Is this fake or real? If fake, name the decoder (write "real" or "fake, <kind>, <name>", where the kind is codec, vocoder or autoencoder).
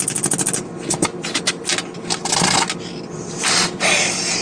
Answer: real